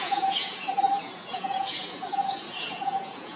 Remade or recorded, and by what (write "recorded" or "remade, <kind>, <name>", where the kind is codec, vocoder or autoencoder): remade, vocoder, Vocos